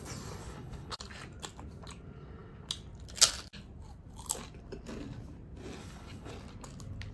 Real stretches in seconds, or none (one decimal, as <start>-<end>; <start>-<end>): 0.0-0.4; 1.0-5.8; 6.3-7.1